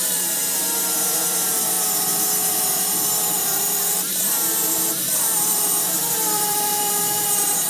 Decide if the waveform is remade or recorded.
remade